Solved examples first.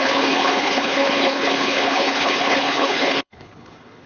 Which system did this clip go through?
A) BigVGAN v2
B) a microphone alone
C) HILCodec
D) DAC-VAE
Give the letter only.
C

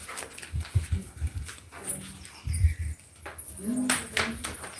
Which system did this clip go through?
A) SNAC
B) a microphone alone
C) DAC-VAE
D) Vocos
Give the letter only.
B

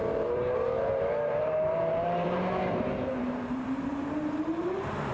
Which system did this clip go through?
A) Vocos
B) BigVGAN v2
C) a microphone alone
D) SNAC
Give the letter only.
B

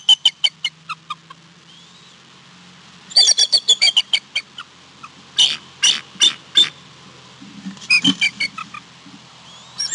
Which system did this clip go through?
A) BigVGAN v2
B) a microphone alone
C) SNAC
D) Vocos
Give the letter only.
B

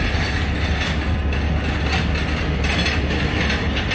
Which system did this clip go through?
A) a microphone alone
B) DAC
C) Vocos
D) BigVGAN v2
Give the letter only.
A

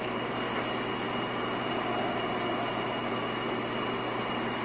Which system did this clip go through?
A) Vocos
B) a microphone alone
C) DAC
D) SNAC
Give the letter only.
B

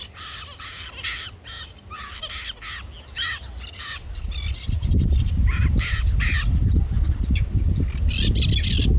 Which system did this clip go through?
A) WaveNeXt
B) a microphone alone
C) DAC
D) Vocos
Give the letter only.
B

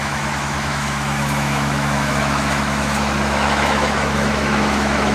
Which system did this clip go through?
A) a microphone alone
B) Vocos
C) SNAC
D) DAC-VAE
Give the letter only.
D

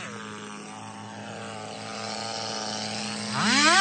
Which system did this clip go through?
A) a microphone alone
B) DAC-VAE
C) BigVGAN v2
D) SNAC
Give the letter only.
A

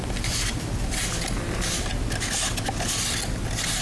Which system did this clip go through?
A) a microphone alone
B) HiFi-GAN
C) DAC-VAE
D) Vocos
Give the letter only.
A